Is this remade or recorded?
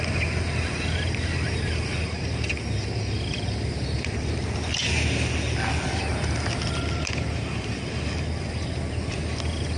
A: recorded